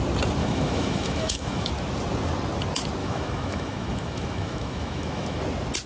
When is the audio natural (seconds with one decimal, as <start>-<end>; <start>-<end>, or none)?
0.0-0.4; 1.7-3.0; 5.4-5.9